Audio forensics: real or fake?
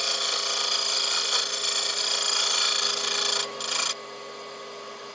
real